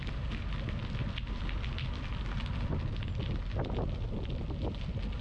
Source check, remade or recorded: recorded